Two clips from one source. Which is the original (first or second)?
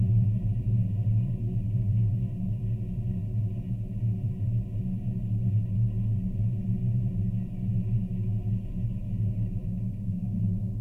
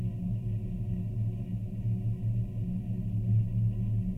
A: second